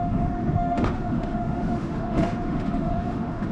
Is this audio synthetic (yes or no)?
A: yes